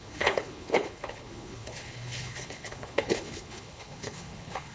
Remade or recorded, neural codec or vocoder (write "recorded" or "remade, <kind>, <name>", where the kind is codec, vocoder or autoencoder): remade, codec, HILCodec